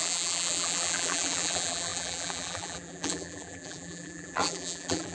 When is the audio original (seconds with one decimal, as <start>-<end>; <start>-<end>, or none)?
none